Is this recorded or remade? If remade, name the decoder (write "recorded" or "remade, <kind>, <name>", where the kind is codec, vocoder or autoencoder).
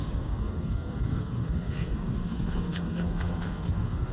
remade, codec, SNAC